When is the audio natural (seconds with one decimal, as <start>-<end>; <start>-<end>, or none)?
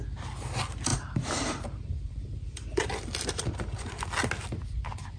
0.0-0.9; 4.0-5.2